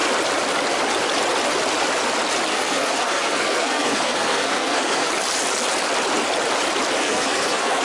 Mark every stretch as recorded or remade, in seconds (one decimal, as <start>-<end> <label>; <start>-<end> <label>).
0.0-2.5 recorded; 2.5-5.1 remade; 5.1-7.0 recorded; 7.0-7.8 remade